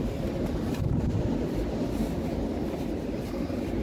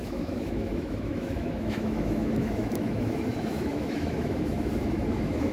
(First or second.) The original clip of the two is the first